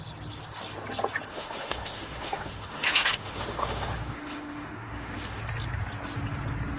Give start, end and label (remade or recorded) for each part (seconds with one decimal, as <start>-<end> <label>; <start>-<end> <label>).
0.0-1.3 recorded; 1.3-5.4 remade; 5.4-6.8 recorded